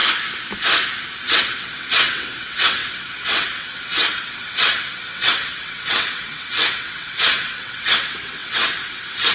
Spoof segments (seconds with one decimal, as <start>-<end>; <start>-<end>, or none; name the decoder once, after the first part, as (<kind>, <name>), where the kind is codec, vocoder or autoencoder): 1.3-9.3 (vocoder, WaveNeXt)